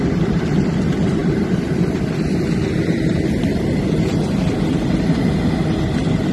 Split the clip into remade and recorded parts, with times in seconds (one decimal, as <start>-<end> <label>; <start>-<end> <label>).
0.0-1.2 recorded; 1.2-5.0 remade; 5.0-6.3 recorded